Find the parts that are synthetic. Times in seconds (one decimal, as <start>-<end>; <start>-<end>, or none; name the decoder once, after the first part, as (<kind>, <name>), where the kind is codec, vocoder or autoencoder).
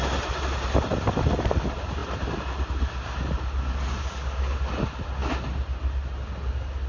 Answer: none